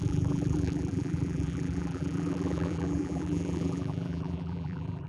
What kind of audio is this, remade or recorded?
remade